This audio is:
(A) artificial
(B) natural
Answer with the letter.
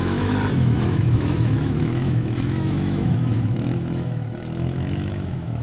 A